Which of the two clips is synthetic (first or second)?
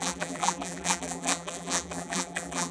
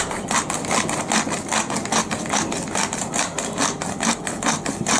first